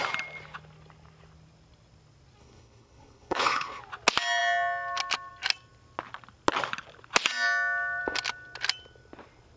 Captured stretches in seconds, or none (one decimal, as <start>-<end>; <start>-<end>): 0.0-2.4; 3.8-9.6